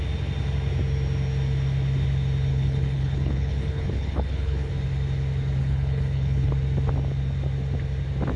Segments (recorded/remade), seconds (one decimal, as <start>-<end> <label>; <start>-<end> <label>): 0.0-2.5 recorded; 2.5-4.7 remade; 4.7-5.6 recorded; 5.6-6.5 remade; 6.5-8.4 recorded